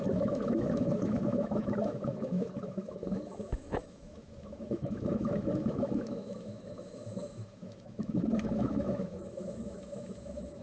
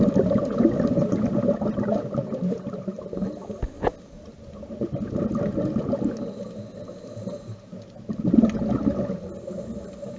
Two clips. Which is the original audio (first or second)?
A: second